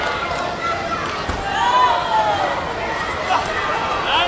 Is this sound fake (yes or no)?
no